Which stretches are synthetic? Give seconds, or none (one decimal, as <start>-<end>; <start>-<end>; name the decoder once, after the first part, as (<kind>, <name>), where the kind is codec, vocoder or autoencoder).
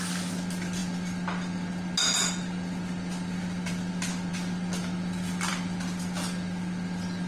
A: none